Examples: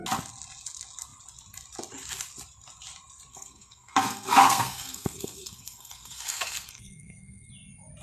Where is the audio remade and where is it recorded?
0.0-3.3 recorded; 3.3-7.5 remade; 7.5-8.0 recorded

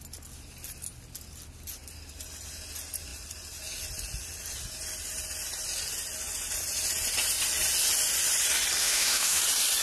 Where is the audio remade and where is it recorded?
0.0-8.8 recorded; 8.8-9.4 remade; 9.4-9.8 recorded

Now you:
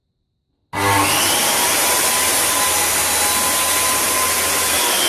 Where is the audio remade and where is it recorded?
0.0-5.1 recorded

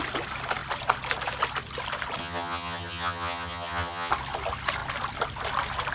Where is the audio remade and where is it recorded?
0.0-2.2 recorded; 2.2-4.1 remade; 4.1-5.9 recorded